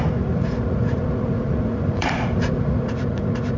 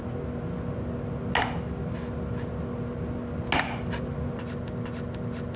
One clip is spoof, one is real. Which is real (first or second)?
second